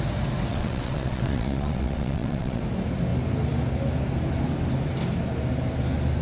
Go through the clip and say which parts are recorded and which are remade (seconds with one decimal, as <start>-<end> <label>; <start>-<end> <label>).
0.0-0.5 recorded; 0.5-2.6 remade; 2.6-6.2 recorded